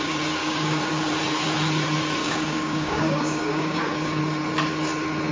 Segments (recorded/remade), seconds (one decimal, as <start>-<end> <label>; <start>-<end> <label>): 0.0-0.4 recorded; 0.4-0.9 remade; 0.9-2.2 recorded; 2.2-4.2 remade; 4.2-5.3 recorded